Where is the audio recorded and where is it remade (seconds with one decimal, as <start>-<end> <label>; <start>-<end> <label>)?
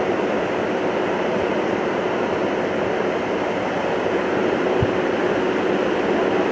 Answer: 0.0-6.5 recorded